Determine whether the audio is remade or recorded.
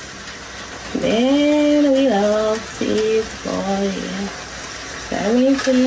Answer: recorded